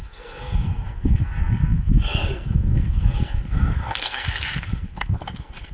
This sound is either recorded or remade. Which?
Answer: remade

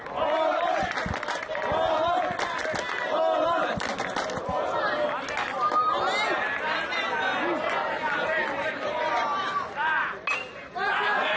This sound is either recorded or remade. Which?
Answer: recorded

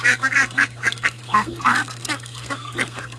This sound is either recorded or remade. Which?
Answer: remade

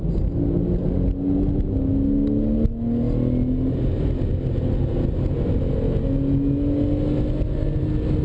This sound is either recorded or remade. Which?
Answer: recorded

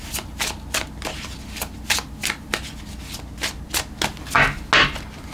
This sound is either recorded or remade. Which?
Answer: recorded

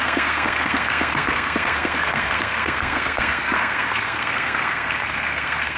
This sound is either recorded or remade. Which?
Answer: remade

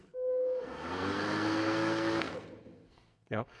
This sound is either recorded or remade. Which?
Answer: remade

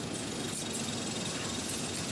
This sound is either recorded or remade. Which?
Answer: recorded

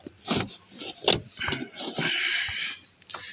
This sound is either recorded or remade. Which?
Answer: recorded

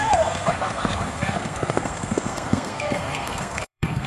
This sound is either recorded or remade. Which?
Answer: remade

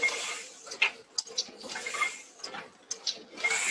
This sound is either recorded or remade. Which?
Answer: recorded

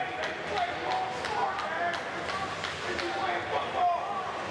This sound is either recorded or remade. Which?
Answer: recorded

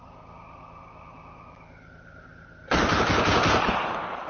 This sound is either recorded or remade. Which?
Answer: recorded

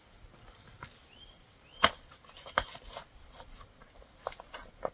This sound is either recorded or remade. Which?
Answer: recorded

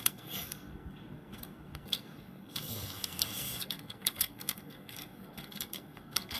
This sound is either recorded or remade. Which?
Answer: remade